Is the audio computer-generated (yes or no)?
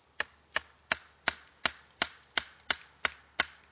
no